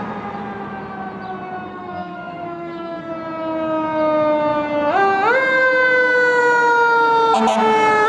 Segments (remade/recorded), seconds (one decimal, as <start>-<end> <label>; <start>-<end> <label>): 0.0-1.7 recorded; 1.7-3.1 remade; 3.1-8.1 recorded